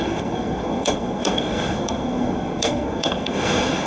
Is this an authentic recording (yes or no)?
no